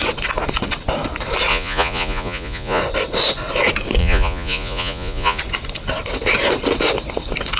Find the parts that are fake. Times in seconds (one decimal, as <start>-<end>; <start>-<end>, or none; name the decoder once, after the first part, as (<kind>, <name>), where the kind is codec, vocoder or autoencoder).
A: 1.5-2.8 (vocoder, Vocos); 4.0-5.4